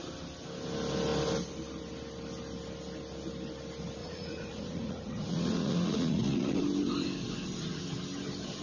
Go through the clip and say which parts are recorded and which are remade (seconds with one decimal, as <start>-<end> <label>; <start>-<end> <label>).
0.0-4.0 recorded; 4.0-6.6 remade; 6.6-8.6 recorded